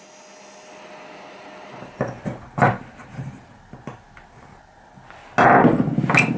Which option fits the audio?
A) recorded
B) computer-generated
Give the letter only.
A